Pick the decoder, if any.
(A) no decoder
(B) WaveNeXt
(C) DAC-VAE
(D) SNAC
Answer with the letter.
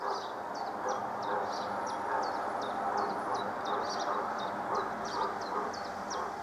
A